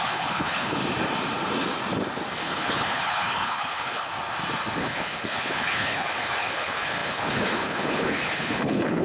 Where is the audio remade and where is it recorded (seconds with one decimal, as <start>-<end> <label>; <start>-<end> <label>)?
0.0-0.8 remade; 0.8-2.3 recorded; 2.3-4.1 remade; 4.1-4.8 recorded; 4.8-9.0 remade